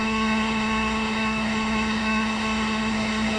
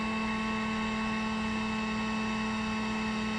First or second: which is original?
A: second